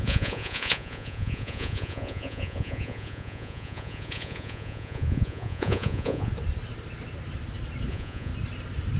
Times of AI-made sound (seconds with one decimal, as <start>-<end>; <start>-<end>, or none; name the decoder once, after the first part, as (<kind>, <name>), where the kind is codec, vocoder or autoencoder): 0.0-6.3 (vocoder, Vocos); 7.9-8.3